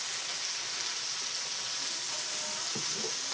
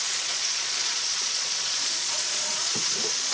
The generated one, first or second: second